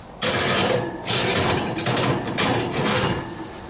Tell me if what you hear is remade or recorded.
recorded